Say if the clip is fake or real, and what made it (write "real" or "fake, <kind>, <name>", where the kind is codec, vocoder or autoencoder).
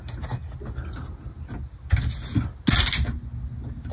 real